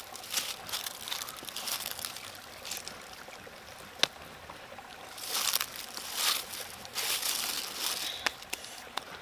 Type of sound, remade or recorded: recorded